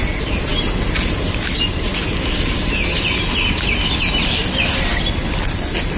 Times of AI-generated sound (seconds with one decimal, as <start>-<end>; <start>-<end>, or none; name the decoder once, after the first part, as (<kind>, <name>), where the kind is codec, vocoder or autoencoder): none